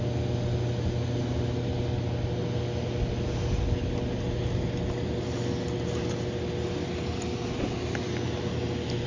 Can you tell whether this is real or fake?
real